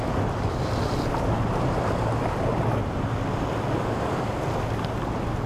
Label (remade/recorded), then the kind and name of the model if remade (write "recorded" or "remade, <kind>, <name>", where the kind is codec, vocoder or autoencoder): recorded